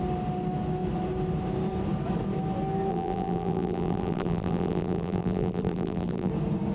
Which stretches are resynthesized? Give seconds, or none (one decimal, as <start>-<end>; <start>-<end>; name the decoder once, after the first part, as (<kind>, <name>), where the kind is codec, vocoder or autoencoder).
2.9-6.3 (vocoder, BigVGAN v2)